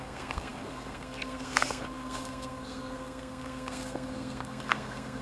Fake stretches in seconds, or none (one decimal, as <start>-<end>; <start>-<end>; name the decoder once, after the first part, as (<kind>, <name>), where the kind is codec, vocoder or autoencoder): 0.0-5.2 (codec, SNAC)